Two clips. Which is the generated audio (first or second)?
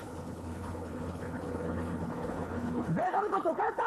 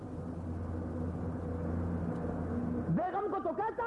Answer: first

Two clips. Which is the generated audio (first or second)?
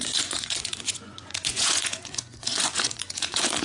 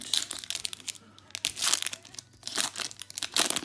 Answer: first